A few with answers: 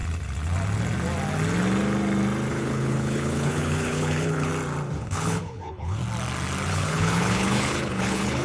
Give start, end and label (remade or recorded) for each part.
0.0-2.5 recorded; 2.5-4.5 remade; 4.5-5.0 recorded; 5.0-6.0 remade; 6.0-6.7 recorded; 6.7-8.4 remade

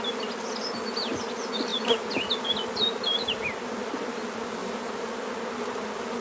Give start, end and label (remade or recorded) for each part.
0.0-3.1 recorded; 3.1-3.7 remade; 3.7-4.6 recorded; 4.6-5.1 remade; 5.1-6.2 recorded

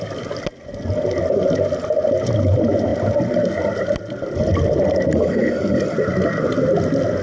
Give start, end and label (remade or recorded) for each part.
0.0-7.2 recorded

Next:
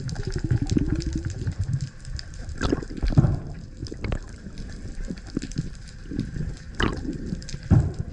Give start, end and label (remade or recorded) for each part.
0.0-8.1 recorded

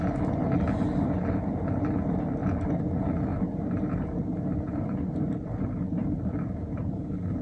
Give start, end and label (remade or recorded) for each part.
0.0-3.3 recorded; 3.3-7.0 remade; 7.0-7.4 recorded